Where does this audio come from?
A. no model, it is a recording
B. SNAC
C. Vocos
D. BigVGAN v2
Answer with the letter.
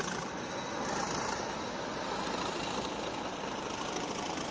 D